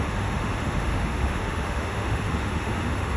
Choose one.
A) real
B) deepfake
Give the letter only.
B